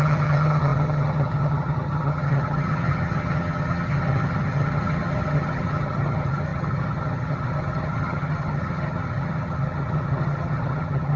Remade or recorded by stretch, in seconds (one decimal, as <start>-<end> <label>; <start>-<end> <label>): 0.0-11.2 remade